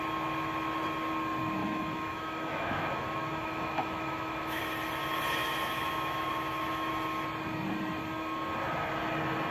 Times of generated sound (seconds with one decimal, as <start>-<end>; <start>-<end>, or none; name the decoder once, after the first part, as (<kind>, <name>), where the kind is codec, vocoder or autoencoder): 1.6-4.6 (autoencoder, DAC-VAE); 5.4-6.9